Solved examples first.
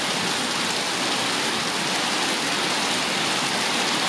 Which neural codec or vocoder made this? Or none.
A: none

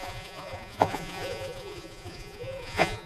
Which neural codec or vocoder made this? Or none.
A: vocoder, Vocos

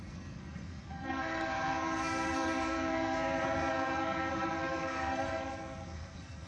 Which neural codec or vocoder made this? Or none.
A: codec, SNAC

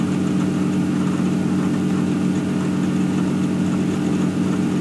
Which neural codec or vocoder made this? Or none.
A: none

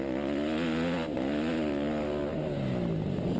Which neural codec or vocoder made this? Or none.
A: none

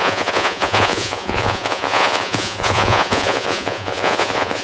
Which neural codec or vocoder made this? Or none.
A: vocoder, Vocos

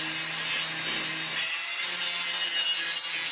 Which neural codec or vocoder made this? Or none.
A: none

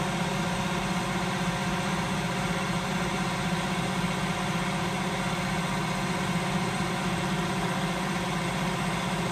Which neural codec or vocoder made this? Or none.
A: none